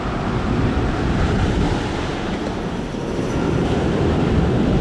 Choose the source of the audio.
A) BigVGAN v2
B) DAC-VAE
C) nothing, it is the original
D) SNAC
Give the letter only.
C